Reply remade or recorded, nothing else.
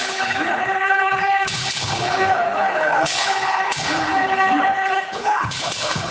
remade